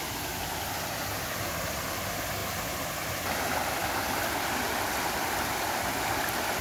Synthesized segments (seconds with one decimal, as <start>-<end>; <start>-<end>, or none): none